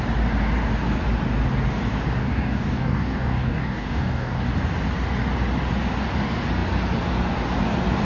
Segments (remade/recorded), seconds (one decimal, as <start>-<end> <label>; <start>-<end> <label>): 0.0-2.2 recorded; 2.2-4.4 remade; 4.4-8.0 recorded